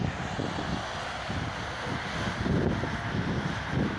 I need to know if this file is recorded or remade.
recorded